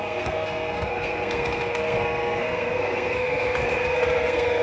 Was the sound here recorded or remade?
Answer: remade